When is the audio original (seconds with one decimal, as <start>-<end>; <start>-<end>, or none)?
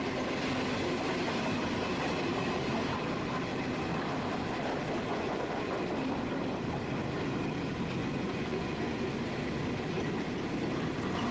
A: 0.0-5.1; 5.8-8.0; 9.2-11.3